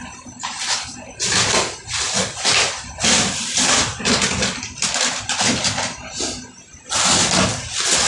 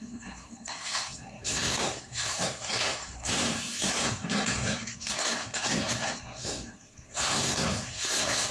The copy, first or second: second